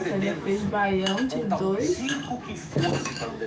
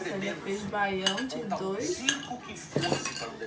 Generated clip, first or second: first